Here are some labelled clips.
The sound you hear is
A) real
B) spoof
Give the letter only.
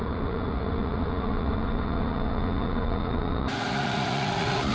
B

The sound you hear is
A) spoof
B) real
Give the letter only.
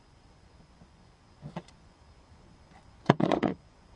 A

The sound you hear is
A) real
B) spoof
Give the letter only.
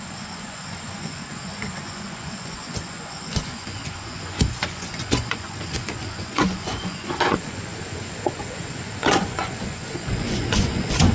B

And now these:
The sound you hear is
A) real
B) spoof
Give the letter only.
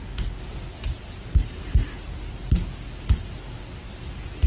A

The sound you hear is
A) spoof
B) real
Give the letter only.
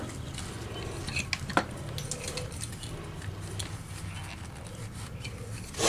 B